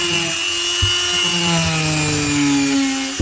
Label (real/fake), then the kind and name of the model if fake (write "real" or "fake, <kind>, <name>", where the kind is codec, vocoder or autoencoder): real